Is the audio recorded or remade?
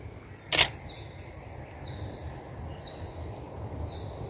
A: recorded